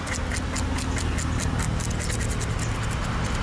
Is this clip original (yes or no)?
yes